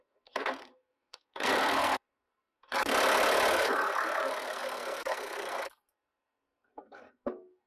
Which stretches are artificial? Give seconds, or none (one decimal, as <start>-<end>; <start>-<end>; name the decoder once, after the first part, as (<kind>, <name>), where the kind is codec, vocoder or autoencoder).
0.0-2.9 (codec, SNAC); 3.5-7.7